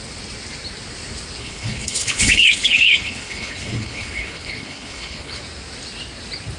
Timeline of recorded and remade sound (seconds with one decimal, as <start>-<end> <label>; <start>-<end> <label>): 0.0-1.4 recorded; 1.4-5.4 remade; 5.4-6.6 recorded